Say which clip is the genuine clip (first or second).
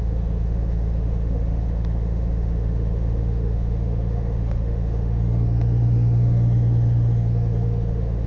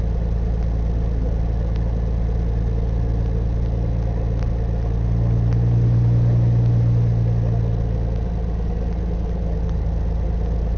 second